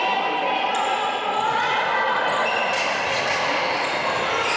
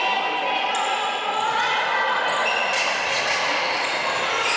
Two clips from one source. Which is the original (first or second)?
second